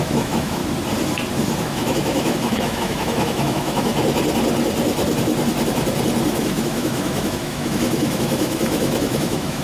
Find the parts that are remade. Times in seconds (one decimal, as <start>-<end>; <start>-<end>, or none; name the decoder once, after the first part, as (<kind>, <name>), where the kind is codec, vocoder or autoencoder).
0.0-0.6 (autoencoder, DAC-VAE); 1.6-3.9; 6.3-9.6